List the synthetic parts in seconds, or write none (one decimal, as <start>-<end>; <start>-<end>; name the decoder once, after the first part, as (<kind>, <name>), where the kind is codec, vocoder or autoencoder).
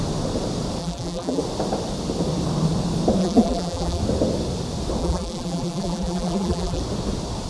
0.8-1.4 (vocoder, BigVGAN v2); 3.2-4.0; 5.0-6.8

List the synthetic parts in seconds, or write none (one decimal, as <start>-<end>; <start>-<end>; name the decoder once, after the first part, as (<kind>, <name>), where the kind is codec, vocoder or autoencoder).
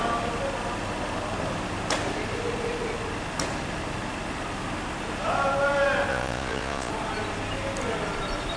6.1-6.9 (vocoder, Vocos)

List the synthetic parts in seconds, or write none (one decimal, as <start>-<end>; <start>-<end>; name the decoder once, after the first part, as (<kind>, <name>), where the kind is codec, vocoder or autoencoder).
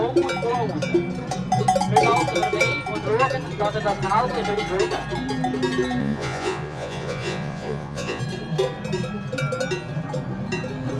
6.0-8.2 (vocoder, Vocos)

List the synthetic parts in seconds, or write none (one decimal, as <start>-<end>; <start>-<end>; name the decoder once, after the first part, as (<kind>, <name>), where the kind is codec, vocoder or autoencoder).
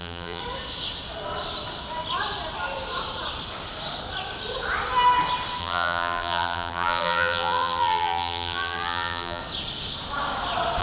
0.0-0.4 (vocoder, BigVGAN v2); 5.6-9.4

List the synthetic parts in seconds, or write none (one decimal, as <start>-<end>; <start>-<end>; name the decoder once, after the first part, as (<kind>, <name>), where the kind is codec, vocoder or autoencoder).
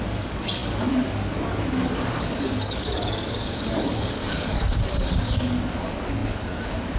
0.0-7.0 (codec, DAC)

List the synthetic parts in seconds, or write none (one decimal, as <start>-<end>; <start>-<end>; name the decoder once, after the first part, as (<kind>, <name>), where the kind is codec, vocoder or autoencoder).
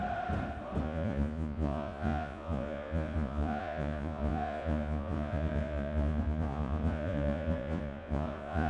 0.8-8.7 (vocoder, Vocos)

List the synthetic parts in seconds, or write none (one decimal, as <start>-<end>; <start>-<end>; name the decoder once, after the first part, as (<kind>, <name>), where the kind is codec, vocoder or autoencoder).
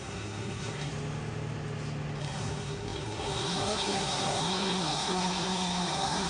0.0-0.9 (codec, SNAC); 2.2-6.3